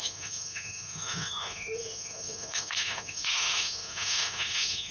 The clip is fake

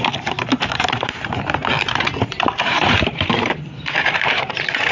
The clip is fake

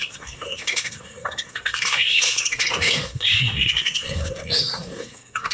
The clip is fake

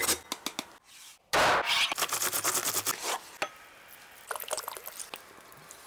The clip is real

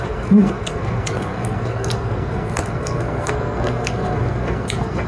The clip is fake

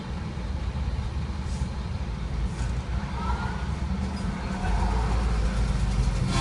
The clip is real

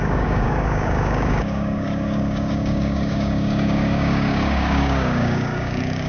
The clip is fake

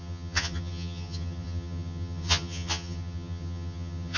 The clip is fake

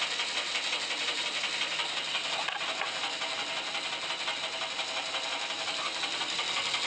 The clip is real